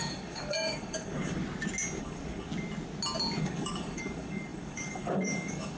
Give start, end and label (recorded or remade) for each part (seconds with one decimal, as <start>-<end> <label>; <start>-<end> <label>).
0.0-1.4 remade; 1.4-2.0 recorded; 2.0-2.5 remade; 2.5-3.4 recorded; 3.4-5.8 remade